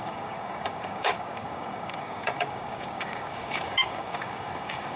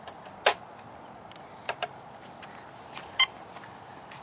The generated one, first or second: first